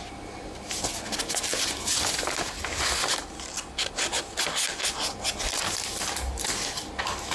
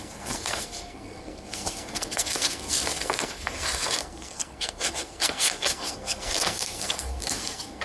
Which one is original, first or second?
first